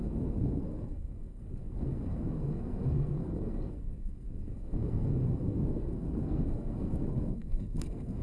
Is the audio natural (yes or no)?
no